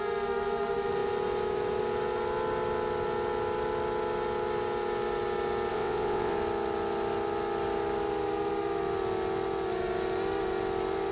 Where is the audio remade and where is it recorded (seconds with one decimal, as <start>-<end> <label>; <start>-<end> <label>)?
0.0-5.7 recorded; 5.7-6.3 remade; 6.3-11.1 recorded